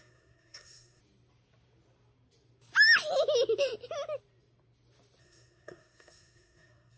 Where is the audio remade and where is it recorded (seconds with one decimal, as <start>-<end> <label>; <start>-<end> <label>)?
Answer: 0.0-1.0 remade; 1.0-5.2 recorded; 5.2-7.0 remade